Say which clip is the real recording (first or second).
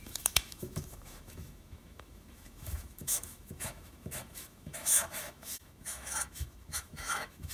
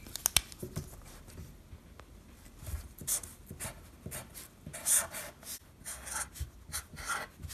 second